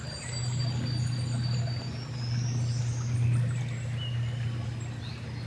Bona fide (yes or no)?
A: yes